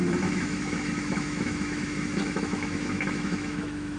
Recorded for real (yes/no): no